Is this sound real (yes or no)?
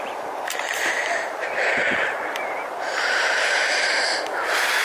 no